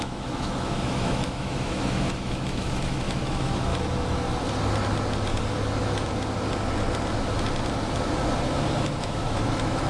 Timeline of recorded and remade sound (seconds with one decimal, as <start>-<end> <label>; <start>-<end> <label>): 0.0-3.7 remade; 3.7-9.0 recorded; 9.0-9.9 remade